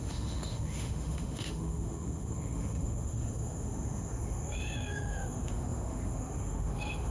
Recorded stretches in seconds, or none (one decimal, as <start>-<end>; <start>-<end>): none